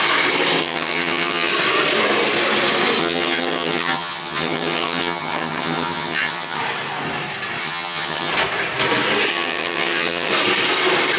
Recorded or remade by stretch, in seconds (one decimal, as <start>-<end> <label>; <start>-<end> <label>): 0.0-0.6 recorded; 0.6-1.5 remade; 1.5-3.0 recorded; 3.0-6.6 remade; 6.6-7.6 recorded; 7.6-8.3 remade; 8.3-9.3 recorded; 9.3-10.3 remade; 10.3-11.2 recorded